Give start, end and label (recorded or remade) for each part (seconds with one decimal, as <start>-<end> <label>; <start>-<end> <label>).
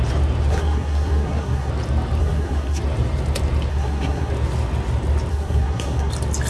0.0-0.5 recorded; 0.5-1.7 remade; 1.7-2.2 recorded; 2.2-2.8 remade; 2.8-3.7 recorded; 3.7-4.3 remade; 4.3-5.3 recorded; 5.3-6.1 remade; 6.1-6.5 recorded